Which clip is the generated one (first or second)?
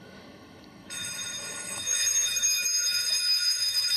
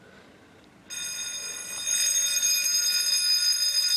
first